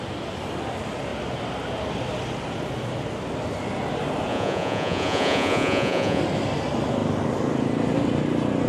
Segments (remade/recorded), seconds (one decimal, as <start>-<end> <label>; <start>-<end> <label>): 0.0-4.3 recorded; 4.3-6.2 remade; 6.2-8.7 recorded